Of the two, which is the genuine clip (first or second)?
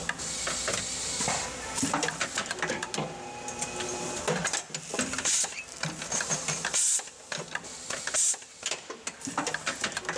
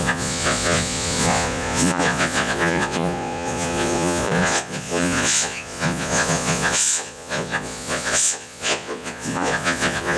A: first